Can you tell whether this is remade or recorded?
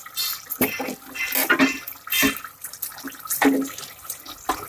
recorded